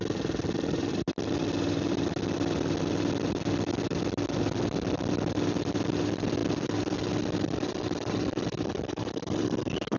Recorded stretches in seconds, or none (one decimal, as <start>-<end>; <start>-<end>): 0.0-10.0